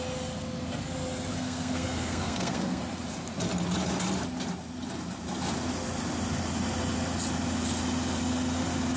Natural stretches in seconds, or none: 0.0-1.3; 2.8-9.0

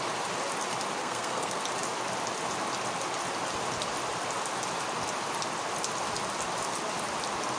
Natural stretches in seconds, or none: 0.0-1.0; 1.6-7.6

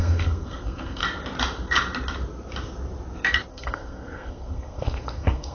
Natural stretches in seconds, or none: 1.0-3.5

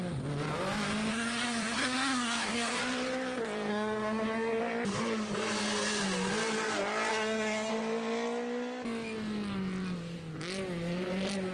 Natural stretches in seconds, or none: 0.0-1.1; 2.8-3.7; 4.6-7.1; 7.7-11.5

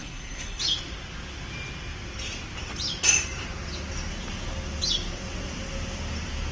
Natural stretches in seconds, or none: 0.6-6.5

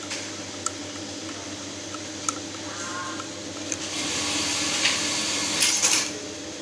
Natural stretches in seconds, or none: 0.0-6.6

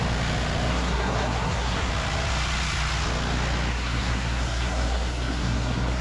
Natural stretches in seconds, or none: 0.0-0.7; 1.9-3.7

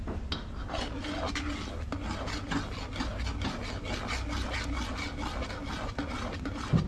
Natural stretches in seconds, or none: 0.0-6.9